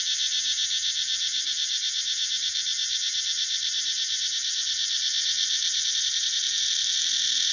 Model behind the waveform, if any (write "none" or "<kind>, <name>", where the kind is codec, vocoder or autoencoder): vocoder, BigVGAN v2